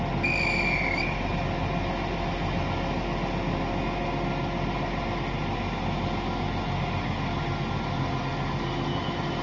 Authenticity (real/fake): real